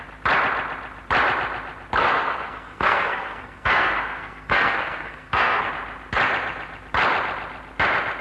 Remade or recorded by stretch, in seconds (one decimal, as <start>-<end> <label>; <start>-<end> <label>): 0.0-2.0 recorded; 2.0-5.7 remade; 5.7-8.2 recorded